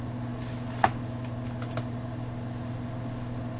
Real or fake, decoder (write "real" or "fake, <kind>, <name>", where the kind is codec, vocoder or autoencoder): real